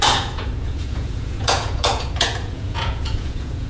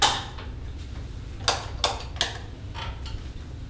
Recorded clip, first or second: second